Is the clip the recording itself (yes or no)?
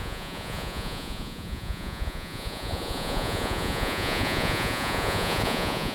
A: no